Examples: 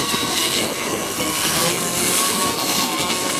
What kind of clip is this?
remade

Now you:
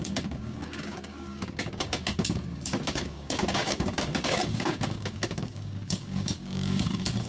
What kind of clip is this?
remade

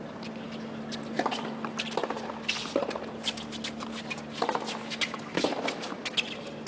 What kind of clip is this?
recorded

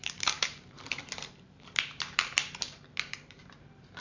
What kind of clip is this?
remade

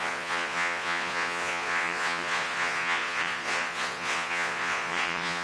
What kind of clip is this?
remade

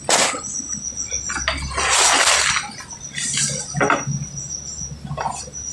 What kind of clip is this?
recorded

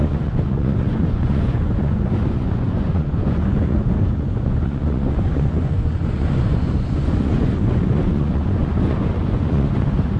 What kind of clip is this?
remade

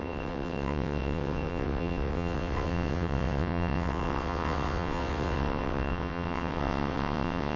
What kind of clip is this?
remade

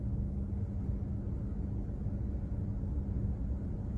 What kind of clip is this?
recorded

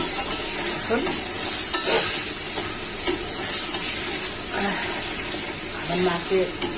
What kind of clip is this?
recorded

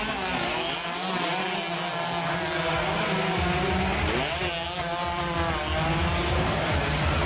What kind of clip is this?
recorded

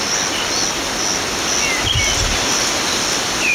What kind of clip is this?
recorded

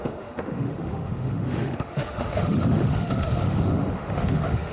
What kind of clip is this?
remade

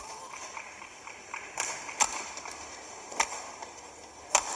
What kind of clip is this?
recorded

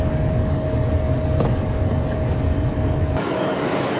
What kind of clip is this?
remade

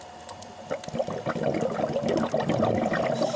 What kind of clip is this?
recorded